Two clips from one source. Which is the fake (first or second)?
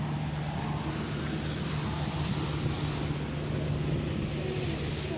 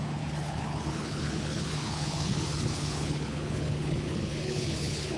second